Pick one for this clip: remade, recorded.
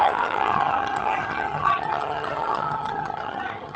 remade